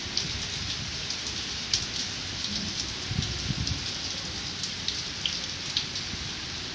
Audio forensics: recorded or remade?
recorded